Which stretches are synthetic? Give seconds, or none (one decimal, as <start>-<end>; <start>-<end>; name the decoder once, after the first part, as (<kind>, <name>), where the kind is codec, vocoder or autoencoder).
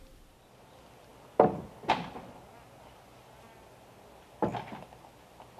none